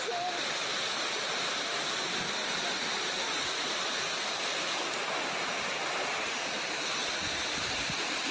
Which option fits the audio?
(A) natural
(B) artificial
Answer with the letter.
A